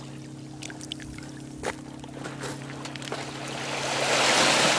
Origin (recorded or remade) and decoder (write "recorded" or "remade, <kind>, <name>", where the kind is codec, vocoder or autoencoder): recorded